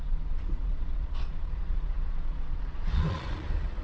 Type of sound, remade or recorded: remade